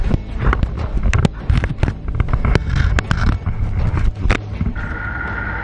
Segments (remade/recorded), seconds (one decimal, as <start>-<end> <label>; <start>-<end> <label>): 0.0-5.6 recorded

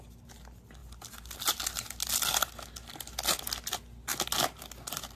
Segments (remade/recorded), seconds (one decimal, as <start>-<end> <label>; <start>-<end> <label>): 0.0-5.2 recorded

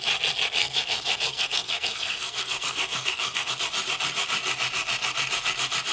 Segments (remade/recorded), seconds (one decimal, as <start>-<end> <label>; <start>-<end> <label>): 0.0-0.6 recorded; 0.6-3.5 remade; 3.5-5.9 recorded